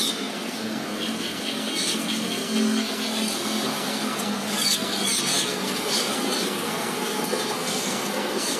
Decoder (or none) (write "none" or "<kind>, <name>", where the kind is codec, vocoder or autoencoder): codec, SNAC